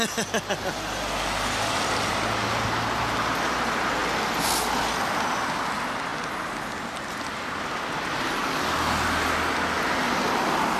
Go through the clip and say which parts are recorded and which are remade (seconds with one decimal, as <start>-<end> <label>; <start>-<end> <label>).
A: 0.0-10.8 recorded